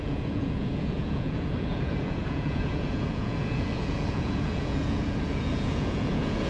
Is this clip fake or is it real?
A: fake